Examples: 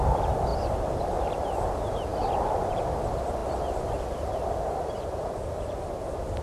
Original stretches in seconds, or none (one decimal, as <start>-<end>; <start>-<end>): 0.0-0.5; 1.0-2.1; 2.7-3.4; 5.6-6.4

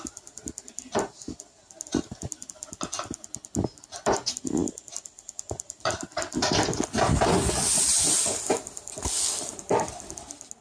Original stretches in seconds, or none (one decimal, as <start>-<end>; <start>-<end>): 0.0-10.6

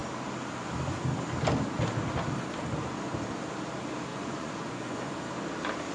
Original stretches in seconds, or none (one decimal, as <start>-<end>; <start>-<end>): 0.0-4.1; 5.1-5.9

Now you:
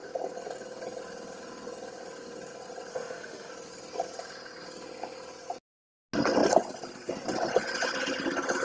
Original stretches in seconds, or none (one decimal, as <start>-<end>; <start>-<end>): 0.0-2.9; 3.5-8.6